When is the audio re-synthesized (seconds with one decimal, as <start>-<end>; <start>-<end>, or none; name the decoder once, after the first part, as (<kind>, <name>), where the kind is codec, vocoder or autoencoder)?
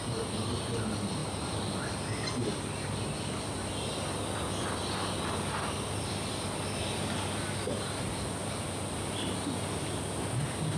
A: 8.4-9.1 (vocoder, BigVGAN v2)